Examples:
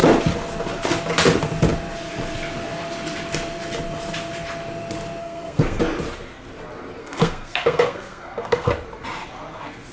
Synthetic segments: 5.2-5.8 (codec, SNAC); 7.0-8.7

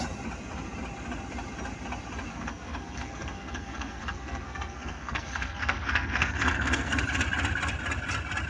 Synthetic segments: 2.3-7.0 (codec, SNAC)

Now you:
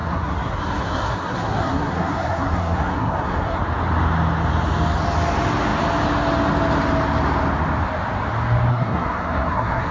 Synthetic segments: 0.0-3.6 (codec, SNAC); 8.7-9.9